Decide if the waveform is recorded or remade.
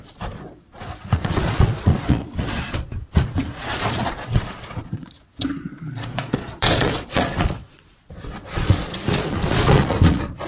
remade